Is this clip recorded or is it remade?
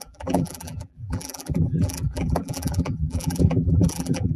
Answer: remade